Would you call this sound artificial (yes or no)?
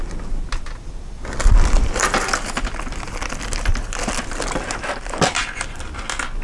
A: no